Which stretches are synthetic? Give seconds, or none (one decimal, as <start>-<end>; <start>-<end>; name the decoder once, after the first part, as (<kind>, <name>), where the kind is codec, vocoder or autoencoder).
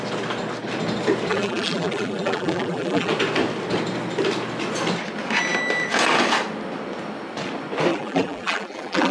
1.3-3.1 (vocoder, BigVGAN v2); 7.9-9.1